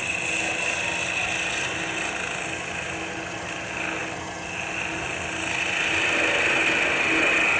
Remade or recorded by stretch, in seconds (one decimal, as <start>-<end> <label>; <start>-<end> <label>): 0.0-7.6 recorded